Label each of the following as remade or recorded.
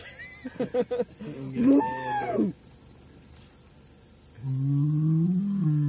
recorded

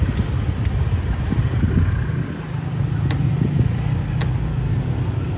recorded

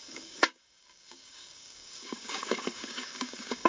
remade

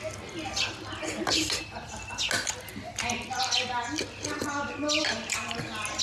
recorded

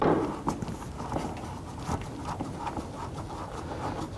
recorded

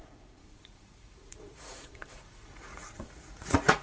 remade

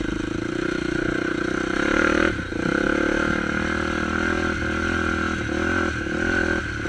recorded